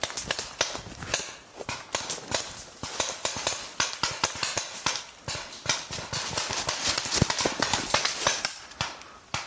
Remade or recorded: recorded